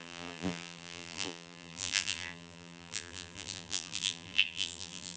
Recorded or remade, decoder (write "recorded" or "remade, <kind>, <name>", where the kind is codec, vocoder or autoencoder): remade, vocoder, BigVGAN v2